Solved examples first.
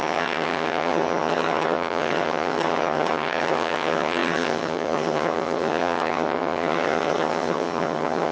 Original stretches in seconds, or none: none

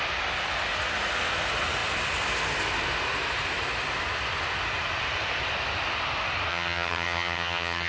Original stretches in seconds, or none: 0.0-6.5

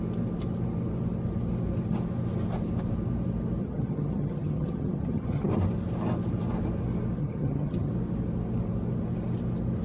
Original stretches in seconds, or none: 0.0-3.6; 5.5-7.2; 7.9-9.8

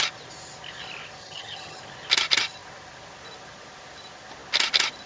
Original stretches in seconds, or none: 0.0-1.2; 1.8-5.1